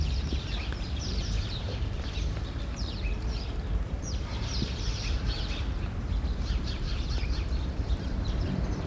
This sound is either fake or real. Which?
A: fake